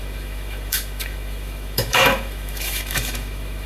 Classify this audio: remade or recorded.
remade